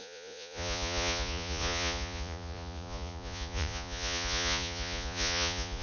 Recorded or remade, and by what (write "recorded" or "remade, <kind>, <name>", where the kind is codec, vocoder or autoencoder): remade, vocoder, Vocos